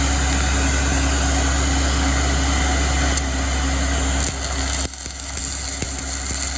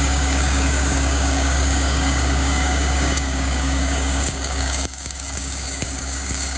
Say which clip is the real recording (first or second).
first